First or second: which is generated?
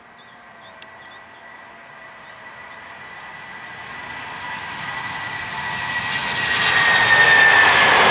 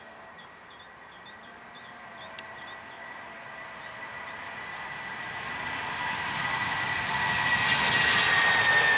second